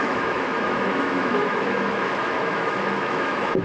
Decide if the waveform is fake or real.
fake